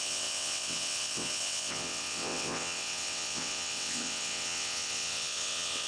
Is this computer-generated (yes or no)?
yes